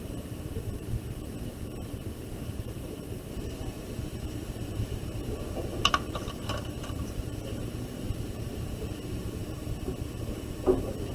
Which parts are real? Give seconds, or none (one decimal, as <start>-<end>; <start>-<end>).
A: 9.4-11.1